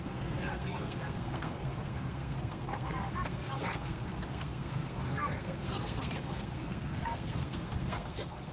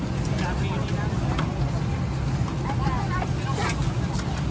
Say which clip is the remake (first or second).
first